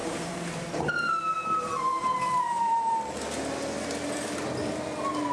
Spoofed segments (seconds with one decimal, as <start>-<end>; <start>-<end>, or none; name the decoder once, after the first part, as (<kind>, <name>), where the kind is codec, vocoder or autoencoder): 0.0-3.2 (vocoder, BigVGAN v2)